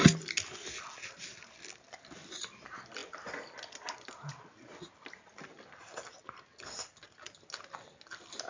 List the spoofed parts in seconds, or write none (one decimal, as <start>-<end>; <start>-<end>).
none